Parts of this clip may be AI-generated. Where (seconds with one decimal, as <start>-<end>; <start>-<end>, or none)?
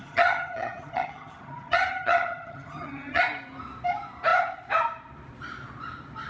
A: 0.0-3.2